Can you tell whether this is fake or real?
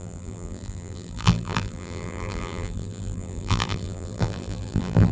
fake